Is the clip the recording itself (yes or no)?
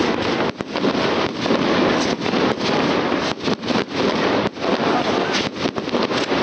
yes